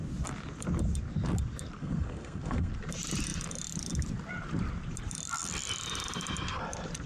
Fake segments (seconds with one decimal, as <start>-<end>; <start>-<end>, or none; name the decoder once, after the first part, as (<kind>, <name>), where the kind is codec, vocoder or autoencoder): 1.8-2.7 (codec, SNAC)

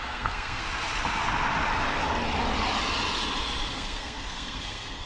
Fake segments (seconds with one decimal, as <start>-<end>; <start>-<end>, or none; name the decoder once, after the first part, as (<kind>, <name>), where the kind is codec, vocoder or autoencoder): 0.0-0.6 (codec, SNAC); 3.7-5.1

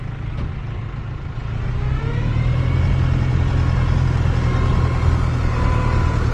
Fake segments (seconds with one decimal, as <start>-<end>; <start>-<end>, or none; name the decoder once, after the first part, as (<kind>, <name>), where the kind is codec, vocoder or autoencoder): none

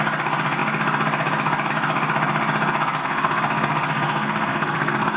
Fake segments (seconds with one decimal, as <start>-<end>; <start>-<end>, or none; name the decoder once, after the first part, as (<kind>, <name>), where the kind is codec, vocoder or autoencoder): 3.0-5.2 (codec, SNAC)

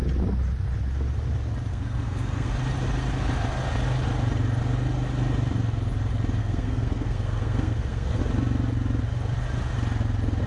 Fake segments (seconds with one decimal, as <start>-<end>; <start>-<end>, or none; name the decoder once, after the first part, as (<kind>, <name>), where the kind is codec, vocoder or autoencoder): 1.7-2.5 (codec, SNAC); 6.4-8.2